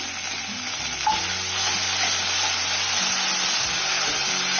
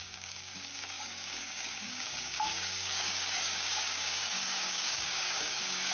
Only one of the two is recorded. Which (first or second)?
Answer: first